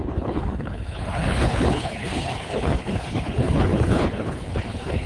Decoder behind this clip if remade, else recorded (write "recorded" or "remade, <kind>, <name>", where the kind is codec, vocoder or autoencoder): remade, codec, HILCodec